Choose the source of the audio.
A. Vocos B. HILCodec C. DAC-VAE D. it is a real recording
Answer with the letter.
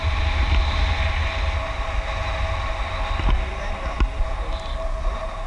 D